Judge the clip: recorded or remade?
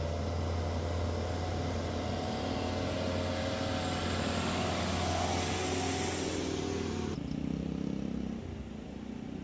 recorded